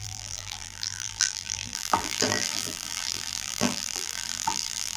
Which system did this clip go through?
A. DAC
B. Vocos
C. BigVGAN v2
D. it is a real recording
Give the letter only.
C